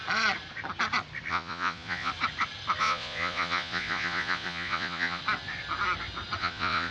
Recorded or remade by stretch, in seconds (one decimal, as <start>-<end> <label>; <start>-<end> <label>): 0.0-1.3 recorded; 1.3-2.1 remade; 2.1-2.8 recorded; 2.8-5.2 remade; 5.2-6.4 recorded; 6.4-6.9 remade